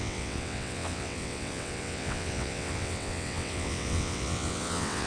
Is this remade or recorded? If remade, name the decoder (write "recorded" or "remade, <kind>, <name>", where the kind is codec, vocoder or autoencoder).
remade, vocoder, WaveNeXt